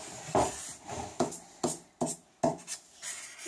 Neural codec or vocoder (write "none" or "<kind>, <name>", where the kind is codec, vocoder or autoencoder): none